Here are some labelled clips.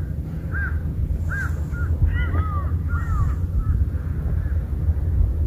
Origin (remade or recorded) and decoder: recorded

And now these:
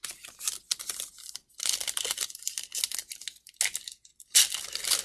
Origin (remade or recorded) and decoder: recorded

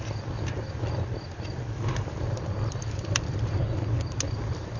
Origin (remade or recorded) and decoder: recorded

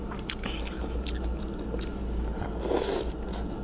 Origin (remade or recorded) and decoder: recorded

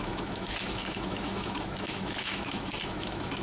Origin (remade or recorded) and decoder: remade, autoencoder, DAC-VAE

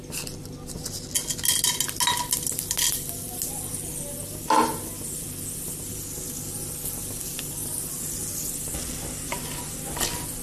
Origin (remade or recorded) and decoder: recorded